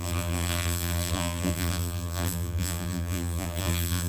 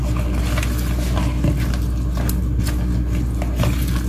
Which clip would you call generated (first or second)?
first